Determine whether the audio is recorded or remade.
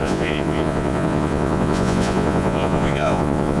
remade